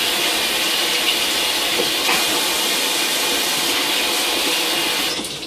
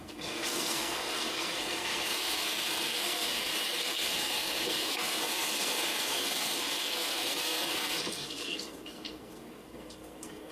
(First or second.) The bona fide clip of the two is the first